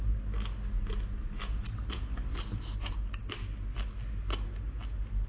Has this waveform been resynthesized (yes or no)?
no